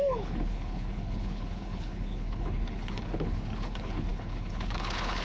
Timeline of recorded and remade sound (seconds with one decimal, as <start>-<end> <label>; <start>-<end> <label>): 0.0-5.2 remade